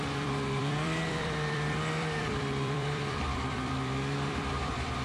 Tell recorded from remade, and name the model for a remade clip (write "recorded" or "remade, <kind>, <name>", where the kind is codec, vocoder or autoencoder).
remade, vocoder, BigVGAN v2